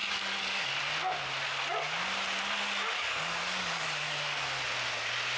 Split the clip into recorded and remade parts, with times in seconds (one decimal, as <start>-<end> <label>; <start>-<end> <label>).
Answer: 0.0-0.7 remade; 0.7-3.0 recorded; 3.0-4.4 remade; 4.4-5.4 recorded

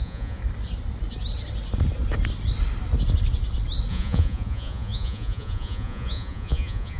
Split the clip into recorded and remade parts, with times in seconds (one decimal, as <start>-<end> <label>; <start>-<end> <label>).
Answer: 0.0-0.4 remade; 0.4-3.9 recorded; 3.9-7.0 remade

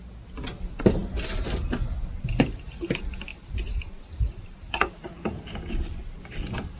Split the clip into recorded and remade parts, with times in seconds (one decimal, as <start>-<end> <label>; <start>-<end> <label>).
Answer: 0.0-3.3 recorded; 3.3-5.8 remade; 5.8-6.8 recorded

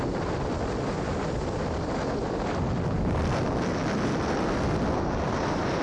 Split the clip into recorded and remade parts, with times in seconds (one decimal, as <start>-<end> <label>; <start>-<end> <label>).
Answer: 0.0-5.8 recorded

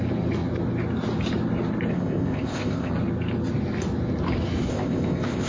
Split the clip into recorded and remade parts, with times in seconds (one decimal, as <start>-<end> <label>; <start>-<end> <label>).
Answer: 0.0-1.9 recorded; 1.9-2.9 remade; 2.9-4.7 recorded; 4.7-5.5 remade

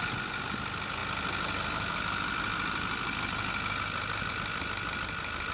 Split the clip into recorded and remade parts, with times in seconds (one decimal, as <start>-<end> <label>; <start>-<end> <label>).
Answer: 0.0-5.5 recorded

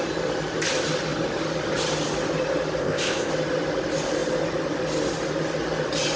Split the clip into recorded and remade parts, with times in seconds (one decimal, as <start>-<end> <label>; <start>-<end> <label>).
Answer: 0.0-2.8 recorded; 2.8-3.3 remade; 3.3-6.2 recorded

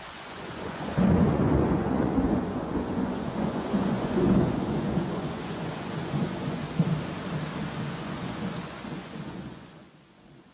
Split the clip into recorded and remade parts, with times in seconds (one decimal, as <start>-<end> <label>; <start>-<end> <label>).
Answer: 0.0-6.6 remade; 6.6-7.7 recorded; 7.7-10.5 remade